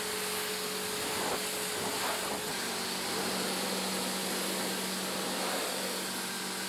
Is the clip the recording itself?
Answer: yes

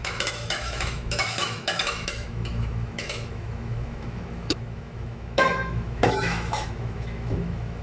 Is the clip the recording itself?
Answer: no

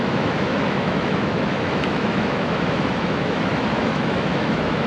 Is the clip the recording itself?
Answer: no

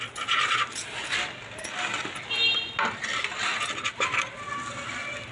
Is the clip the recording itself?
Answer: yes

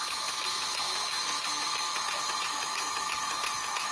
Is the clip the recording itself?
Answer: no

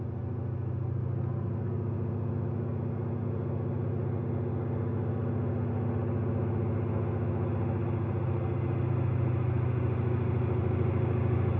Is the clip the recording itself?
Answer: yes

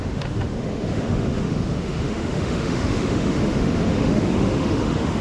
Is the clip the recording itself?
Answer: no